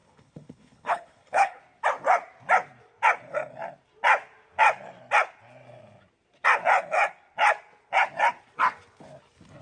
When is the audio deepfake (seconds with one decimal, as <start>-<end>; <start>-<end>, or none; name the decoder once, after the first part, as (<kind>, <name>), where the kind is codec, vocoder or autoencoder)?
0.0-1.6 (codec, HILCodec)